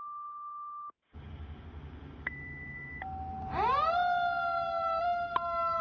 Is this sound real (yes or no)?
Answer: yes